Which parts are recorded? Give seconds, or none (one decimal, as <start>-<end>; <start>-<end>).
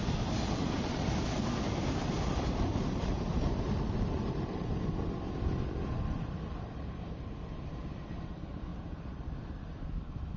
1.2-2.0; 4.8-10.4